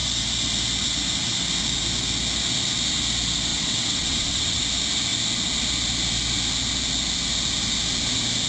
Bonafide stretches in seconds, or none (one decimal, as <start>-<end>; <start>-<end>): 0.0-3.5; 4.6-8.5